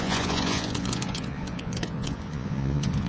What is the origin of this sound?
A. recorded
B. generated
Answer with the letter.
B